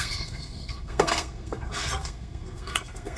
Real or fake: fake